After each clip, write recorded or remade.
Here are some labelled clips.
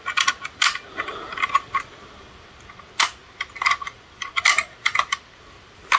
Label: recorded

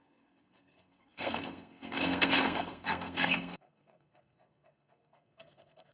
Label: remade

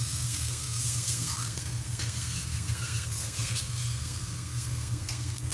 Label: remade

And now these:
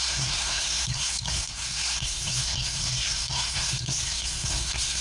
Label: remade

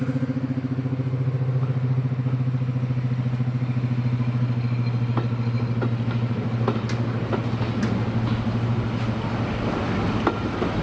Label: recorded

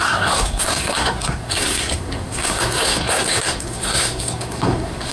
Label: remade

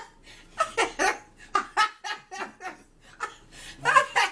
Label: recorded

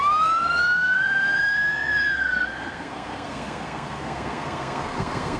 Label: remade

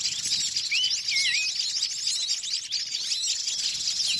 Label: recorded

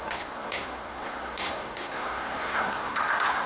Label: remade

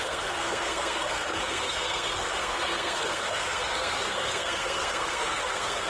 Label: remade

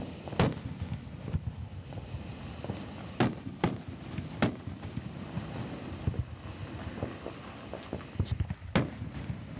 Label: recorded